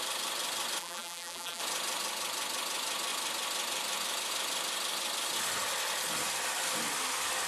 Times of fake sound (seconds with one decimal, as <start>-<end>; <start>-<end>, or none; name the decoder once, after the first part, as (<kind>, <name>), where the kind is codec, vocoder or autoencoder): 0.8-1.6 (vocoder, BigVGAN v2)